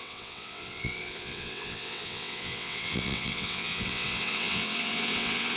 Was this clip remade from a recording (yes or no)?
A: yes